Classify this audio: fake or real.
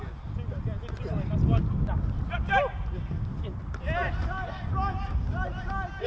real